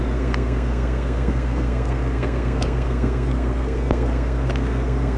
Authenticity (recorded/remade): remade